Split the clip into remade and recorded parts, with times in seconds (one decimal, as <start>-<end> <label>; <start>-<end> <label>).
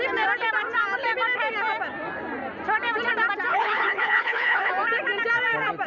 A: 0.0-3.5 recorded; 3.5-4.7 remade; 4.7-5.9 recorded